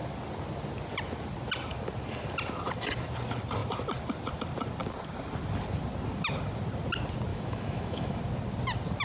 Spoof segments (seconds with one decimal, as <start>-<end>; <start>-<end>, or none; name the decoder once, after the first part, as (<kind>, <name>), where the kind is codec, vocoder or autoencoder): 7.3-8.2 (autoencoder, DAC-VAE)